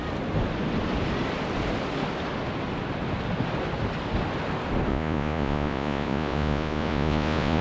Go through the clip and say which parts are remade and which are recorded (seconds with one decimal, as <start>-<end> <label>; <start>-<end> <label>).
0.0-4.9 recorded; 4.9-7.6 remade